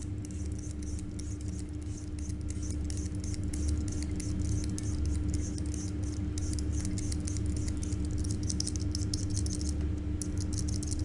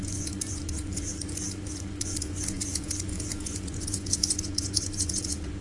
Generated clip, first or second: second